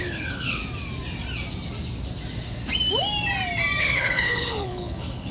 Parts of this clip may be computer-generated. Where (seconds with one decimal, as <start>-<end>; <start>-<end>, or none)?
0.0-0.6; 3.8-5.3